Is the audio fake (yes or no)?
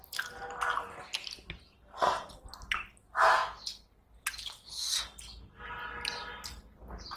no